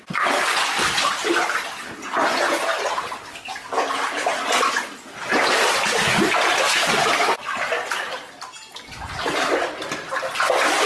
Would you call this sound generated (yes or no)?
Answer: no